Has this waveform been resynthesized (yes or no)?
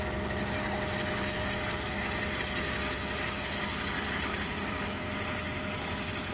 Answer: no